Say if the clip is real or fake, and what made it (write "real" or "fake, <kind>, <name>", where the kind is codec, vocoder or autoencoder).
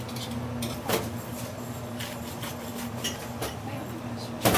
real